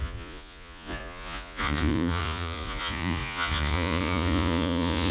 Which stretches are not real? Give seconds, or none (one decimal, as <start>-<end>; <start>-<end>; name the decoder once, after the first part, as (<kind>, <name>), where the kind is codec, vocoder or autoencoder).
0.0-5.1 (vocoder, Vocos)